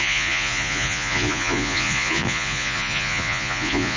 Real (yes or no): no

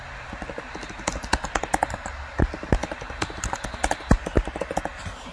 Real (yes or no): yes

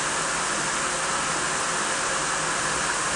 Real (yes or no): yes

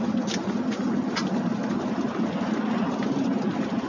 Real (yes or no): yes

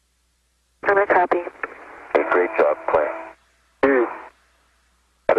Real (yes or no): yes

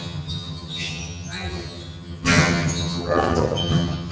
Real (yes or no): no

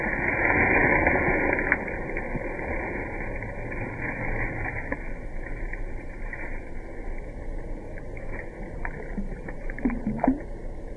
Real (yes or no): yes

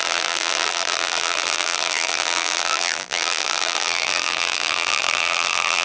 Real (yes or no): no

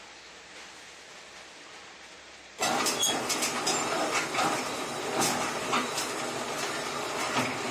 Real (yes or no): yes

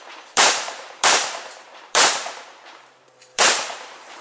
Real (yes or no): no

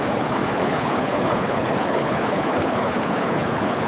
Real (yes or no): no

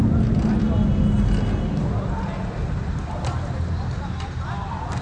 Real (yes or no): yes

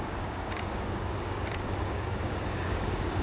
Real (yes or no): no